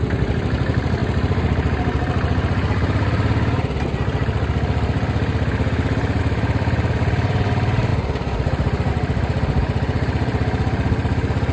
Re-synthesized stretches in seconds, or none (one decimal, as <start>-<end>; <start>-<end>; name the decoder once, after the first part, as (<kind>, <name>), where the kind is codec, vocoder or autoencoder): 0.0-1.0 (vocoder, BigVGAN v2); 6.2-7.9; 8.9-11.5